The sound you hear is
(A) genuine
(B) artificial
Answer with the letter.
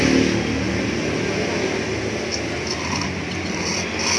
A